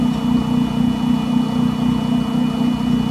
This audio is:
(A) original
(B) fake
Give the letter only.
A